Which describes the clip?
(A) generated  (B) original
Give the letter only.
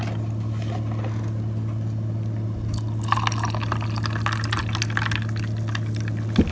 B